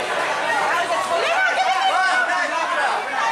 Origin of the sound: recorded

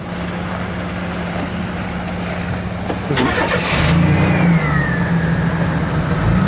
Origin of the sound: recorded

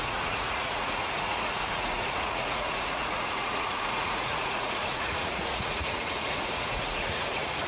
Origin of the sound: remade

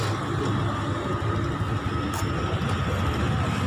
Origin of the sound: recorded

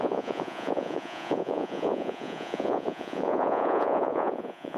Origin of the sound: remade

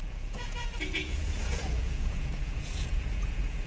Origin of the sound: remade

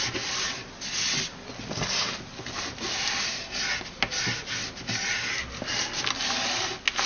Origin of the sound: recorded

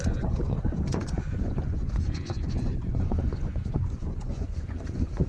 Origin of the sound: remade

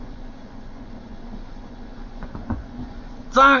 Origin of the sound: remade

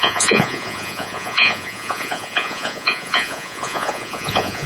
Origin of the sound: remade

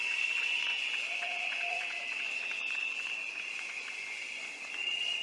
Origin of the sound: remade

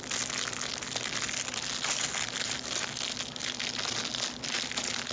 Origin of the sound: recorded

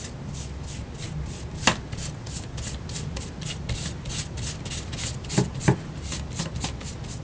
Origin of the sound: recorded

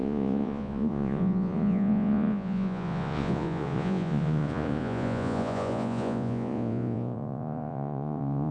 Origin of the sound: remade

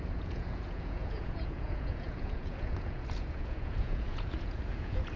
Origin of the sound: remade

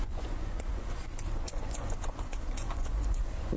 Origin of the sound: remade